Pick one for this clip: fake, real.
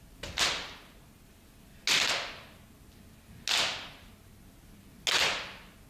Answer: real